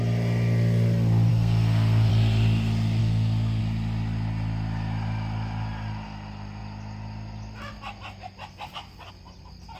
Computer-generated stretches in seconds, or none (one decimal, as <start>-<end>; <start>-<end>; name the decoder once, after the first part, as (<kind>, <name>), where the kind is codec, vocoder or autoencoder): 1.3-2.1 (codec, SNAC); 3.0-3.6